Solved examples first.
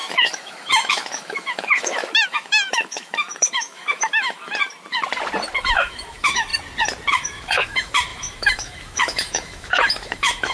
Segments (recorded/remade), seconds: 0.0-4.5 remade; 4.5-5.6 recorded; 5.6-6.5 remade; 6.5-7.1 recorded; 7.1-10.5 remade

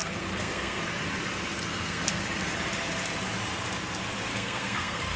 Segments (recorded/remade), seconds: 0.0-0.8 remade; 0.8-1.7 recorded; 1.7-2.2 remade; 2.2-4.3 recorded; 4.3-5.2 remade

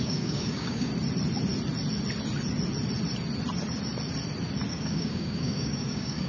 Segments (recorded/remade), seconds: 0.0-0.9 remade; 0.9-4.7 recorded; 4.7-6.3 remade

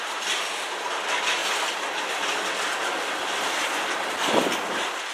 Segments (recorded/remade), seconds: 0.0-5.1 recorded

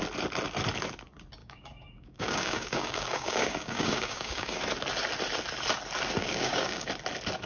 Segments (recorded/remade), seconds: 0.0-1.4 recorded; 1.4-4.6 remade; 4.6-6.2 recorded; 6.2-6.9 remade; 6.9-7.5 recorded